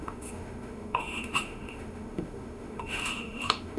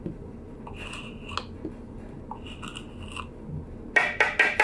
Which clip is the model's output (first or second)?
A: first